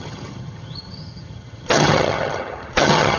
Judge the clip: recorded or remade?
remade